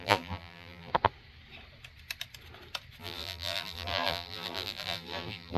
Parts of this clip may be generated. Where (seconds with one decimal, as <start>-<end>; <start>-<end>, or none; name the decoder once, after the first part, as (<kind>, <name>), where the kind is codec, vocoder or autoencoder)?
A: 0.0-0.9 (vocoder, BigVGAN v2); 3.0-5.6